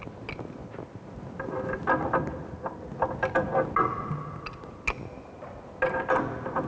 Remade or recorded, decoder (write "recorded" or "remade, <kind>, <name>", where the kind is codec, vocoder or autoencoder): recorded